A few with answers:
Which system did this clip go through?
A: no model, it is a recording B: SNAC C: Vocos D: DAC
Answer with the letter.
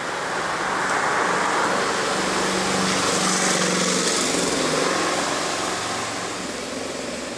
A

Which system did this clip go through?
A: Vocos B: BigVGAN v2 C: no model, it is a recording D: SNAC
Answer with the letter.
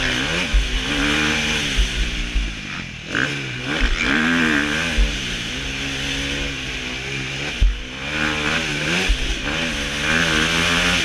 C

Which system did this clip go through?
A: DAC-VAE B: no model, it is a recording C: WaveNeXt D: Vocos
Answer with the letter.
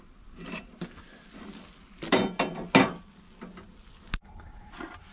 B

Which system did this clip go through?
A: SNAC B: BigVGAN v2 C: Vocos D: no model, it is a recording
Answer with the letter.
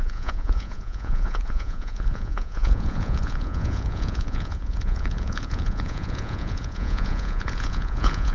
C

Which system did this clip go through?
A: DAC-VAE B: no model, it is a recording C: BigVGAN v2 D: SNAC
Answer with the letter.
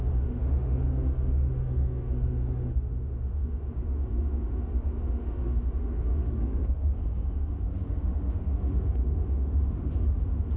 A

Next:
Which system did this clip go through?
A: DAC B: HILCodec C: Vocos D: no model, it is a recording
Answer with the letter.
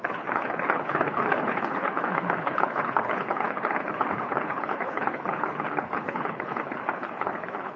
B